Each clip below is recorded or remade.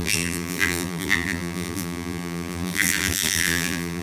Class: remade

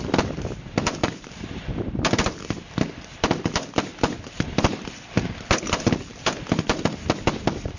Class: remade